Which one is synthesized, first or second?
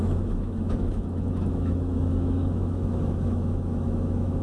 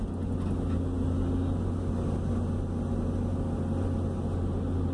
first